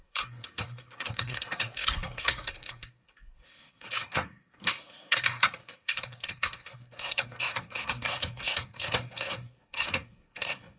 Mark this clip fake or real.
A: fake